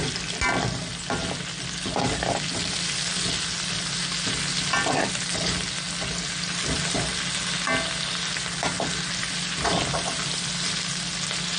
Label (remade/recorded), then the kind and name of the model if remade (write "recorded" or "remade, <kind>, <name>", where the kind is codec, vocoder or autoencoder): recorded